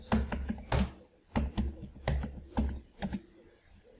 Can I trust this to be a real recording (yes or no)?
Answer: yes